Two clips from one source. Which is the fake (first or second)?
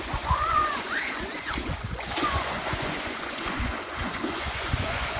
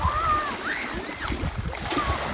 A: first